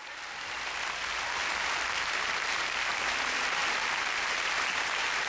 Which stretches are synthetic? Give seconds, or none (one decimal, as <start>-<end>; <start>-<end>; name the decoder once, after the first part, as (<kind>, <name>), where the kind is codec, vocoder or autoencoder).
none